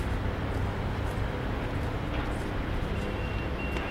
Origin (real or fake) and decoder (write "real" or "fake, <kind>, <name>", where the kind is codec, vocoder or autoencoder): real